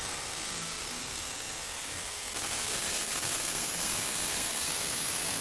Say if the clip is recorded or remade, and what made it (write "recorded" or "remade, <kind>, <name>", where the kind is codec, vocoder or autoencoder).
remade, codec, SNAC